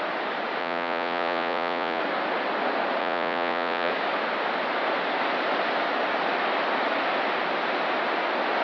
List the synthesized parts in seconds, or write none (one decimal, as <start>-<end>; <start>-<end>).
0.6-2.0; 3.0-3.9